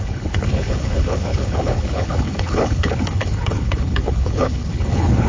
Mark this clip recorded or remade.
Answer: remade